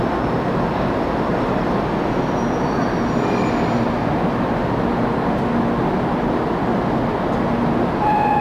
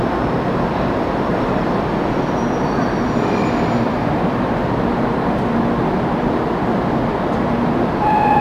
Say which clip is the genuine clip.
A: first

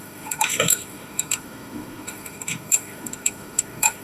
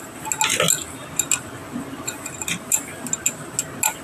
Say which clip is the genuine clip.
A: second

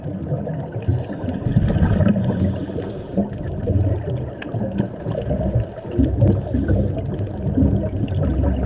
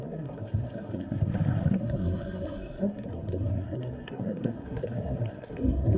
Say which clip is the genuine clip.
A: first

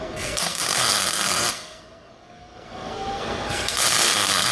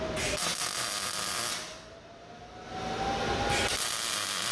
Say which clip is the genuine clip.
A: second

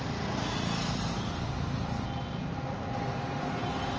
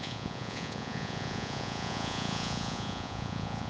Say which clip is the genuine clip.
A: first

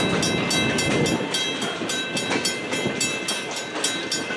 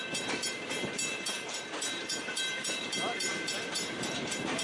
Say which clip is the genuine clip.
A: first